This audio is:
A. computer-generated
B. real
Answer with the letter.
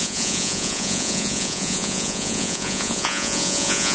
A